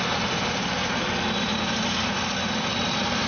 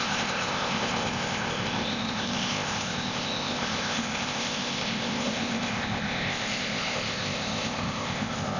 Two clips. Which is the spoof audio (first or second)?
second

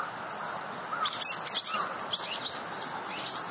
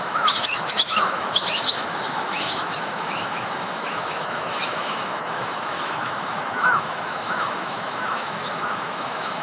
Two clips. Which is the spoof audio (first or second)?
second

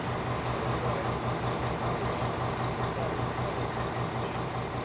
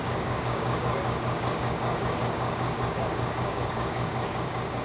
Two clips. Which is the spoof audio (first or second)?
second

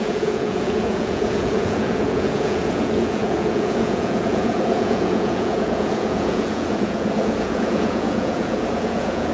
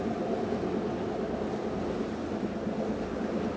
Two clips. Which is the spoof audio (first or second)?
first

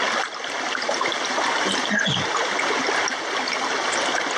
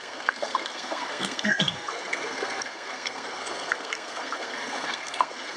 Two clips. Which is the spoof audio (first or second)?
second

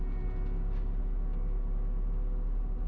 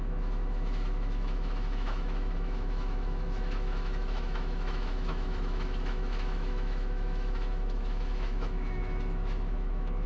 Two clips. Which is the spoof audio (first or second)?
second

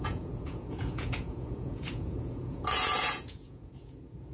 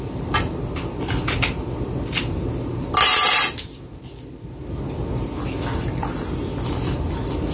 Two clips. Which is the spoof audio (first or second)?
first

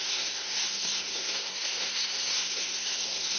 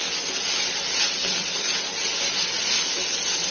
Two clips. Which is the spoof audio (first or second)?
first